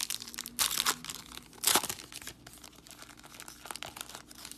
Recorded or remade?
recorded